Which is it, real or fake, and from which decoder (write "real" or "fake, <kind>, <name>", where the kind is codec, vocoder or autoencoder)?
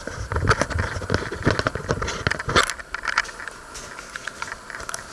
real